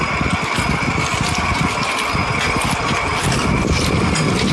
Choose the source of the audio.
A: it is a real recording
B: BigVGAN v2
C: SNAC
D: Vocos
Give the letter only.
A